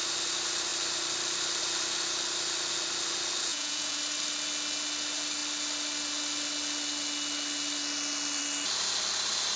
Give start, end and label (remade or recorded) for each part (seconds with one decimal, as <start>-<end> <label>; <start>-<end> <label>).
0.0-3.5 recorded; 3.5-4.0 remade; 4.0-9.6 recorded

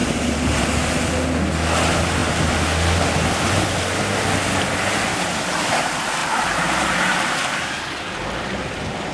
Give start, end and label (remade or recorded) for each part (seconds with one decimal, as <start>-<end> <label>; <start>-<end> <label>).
0.0-6.2 recorded; 6.2-7.7 remade; 7.7-9.1 recorded

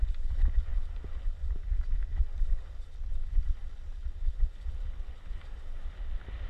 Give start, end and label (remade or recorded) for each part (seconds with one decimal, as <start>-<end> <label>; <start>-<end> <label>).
0.0-6.5 recorded

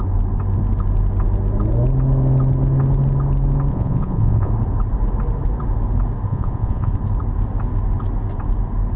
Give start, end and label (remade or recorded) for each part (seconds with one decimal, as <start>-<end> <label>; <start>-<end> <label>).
0.0-3.7 recorded; 3.7-4.5 remade; 4.5-6.3 recorded; 6.3-6.9 remade; 6.9-9.0 recorded

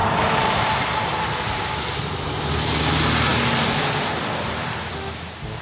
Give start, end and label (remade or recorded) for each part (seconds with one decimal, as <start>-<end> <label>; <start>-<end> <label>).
0.0-1.3 remade; 1.3-5.6 recorded

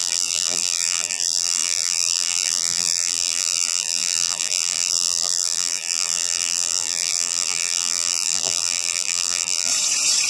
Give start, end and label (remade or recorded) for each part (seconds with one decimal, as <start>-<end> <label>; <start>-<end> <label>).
0.0-9.7 remade; 9.7-10.3 recorded